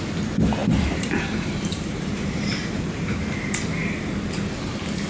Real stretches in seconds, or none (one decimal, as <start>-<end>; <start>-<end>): 0.0-0.6; 3.7-5.1